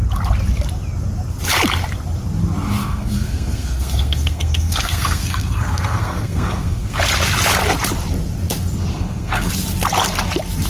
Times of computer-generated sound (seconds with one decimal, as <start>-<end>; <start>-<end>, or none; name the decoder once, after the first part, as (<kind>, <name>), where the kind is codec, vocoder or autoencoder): 2.8-7.0 (codec, SNAC); 8.9-9.5